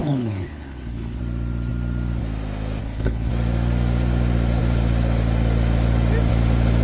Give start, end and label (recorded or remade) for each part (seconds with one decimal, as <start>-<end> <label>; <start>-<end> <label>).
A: 0.0-1.2 remade; 1.2-2.8 recorded; 2.8-3.3 remade; 3.3-6.8 recorded